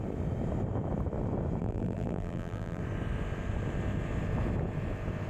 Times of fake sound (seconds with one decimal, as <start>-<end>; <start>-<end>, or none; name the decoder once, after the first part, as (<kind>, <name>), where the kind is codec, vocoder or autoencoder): 1.6-2.8 (vocoder, BigVGAN v2)

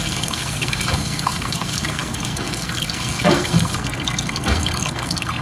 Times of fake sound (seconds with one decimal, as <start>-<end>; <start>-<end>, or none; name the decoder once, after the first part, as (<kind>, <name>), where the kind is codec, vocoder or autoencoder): 0.0-5.4 (codec, SNAC)

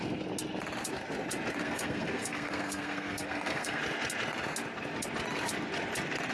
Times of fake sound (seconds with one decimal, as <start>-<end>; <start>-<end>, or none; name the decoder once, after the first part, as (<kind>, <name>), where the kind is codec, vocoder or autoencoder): 1.6-3.8 (codec, SNAC)